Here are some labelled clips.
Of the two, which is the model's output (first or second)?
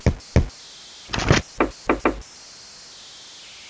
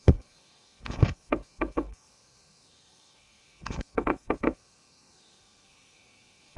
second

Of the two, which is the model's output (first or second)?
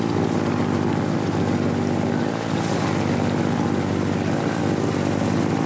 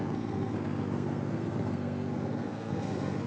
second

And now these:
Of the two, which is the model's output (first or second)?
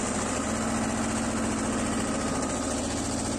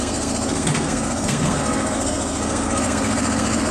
second